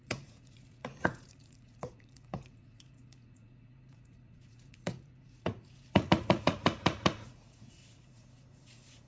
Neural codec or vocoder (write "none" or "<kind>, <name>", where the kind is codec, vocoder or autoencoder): vocoder, Vocos